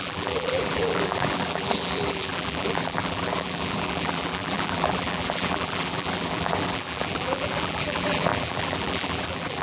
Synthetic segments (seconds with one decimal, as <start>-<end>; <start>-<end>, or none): 0.0-9.6